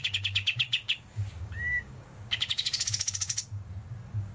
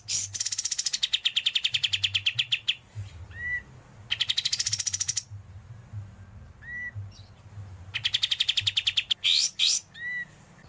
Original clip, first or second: second